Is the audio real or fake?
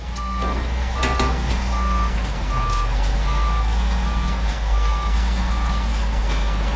fake